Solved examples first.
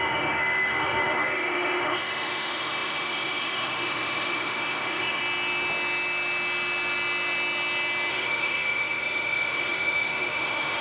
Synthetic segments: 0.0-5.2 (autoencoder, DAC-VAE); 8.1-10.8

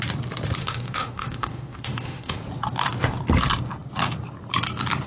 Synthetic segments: 0.6-2.4 (autoencoder, DAC-VAE)